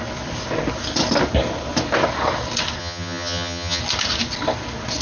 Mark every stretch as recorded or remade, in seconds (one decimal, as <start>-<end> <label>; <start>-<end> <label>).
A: 0.0-2.8 recorded; 2.8-3.8 remade; 3.8-5.0 recorded

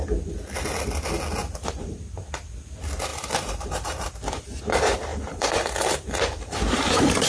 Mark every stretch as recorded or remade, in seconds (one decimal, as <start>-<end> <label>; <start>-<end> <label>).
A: 0.0-1.4 recorded; 1.4-2.0 remade; 2.0-3.1 recorded; 3.1-4.6 remade; 4.6-5.1 recorded; 5.1-7.3 remade

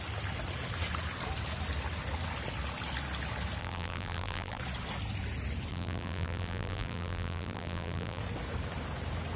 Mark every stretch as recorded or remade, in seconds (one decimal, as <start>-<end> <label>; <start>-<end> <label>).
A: 0.0-3.6 recorded; 3.6-4.6 remade; 4.6-5.7 recorded; 5.7-8.2 remade; 8.2-9.4 recorded

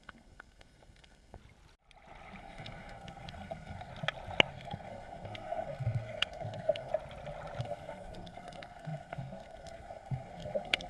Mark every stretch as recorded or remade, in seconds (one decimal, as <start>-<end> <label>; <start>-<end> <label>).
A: 0.0-1.4 remade; 1.4-2.4 recorded; 2.4-3.9 remade; 3.9-4.5 recorded; 4.5-6.9 remade; 6.9-7.6 recorded; 7.6-10.9 remade

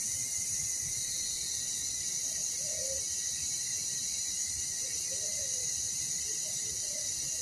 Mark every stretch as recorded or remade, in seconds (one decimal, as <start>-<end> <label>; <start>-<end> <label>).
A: 0.0-0.9 recorded; 0.9-1.9 remade; 1.9-7.4 recorded

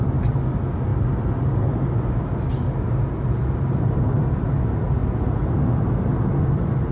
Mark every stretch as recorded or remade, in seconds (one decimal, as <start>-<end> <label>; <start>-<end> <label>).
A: 0.0-6.9 recorded